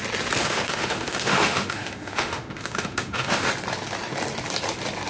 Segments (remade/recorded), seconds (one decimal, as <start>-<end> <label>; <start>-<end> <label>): 0.0-0.4 recorded; 0.4-3.5 remade; 3.5-5.1 recorded